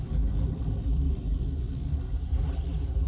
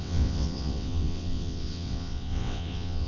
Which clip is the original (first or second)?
first